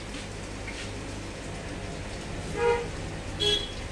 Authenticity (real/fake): real